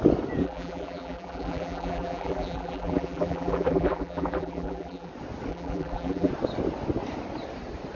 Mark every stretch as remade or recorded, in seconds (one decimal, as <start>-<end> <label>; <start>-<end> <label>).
0.0-0.4 recorded; 0.4-5.1 remade; 5.1-5.5 recorded; 5.5-6.3 remade; 6.3-7.9 recorded